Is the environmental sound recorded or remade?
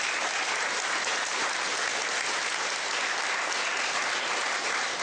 recorded